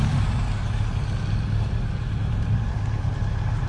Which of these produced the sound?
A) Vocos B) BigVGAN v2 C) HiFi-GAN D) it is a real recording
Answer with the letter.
D